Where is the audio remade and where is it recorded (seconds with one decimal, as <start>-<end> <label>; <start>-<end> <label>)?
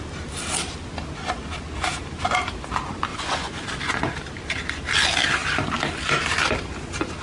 0.0-3.1 recorded; 3.1-4.1 remade; 4.1-7.2 recorded